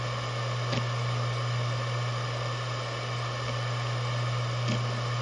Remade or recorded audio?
recorded